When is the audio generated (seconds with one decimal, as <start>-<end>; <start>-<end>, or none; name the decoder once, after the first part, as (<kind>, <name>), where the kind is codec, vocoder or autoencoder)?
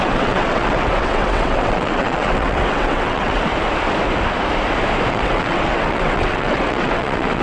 0.0-3.5 (vocoder, WaveNeXt); 5.1-7.4